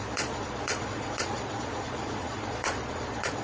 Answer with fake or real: fake